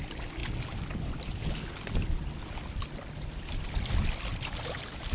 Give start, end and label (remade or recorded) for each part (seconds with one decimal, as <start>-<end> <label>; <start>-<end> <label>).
0.0-5.1 recorded